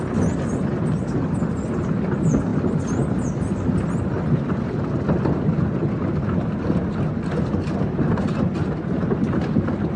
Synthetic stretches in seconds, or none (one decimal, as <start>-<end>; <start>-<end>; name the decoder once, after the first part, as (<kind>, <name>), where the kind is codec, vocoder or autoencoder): none